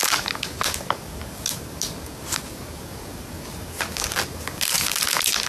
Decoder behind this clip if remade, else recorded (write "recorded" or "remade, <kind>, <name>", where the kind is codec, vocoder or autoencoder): remade, codec, DAC